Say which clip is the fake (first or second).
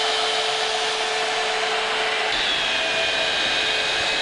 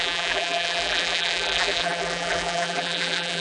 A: second